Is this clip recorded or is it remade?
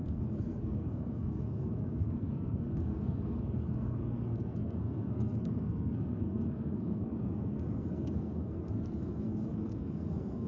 remade